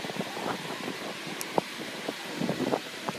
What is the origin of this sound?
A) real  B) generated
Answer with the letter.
B